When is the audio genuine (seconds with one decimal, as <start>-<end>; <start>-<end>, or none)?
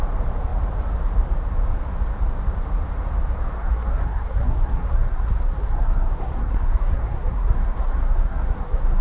0.0-3.6